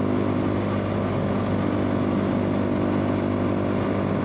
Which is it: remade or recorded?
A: recorded